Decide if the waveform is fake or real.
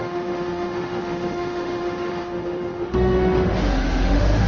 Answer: fake